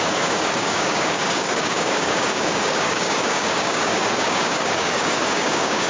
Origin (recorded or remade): remade